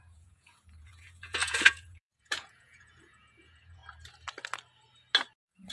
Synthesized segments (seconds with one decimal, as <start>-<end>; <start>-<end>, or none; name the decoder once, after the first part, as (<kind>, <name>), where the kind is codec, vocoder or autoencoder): 0.0-3.8 (vocoder, Vocos)